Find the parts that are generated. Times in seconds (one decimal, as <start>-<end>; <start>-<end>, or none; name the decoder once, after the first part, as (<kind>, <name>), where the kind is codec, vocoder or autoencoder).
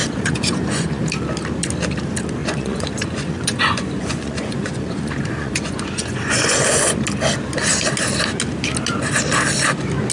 0.0-1.0 (vocoder, Vocos); 2.4-7.0